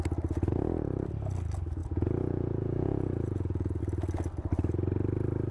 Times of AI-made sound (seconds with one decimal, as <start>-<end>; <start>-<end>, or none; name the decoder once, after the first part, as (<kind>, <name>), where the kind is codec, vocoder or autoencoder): 1.8-3.8 (vocoder, Vocos)